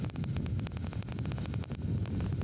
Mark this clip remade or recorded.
recorded